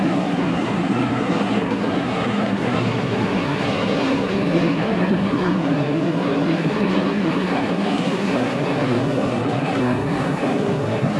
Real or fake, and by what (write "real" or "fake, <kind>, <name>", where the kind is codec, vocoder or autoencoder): fake, codec, SNAC